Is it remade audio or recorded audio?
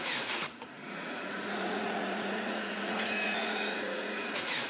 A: remade